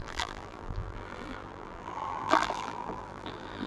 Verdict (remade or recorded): remade